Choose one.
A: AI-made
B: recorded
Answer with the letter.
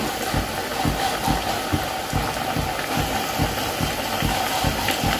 B